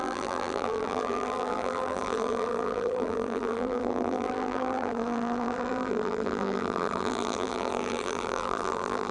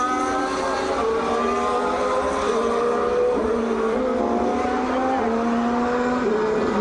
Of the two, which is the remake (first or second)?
first